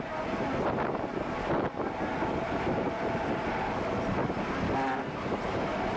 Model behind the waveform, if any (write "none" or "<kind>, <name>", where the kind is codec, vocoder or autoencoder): none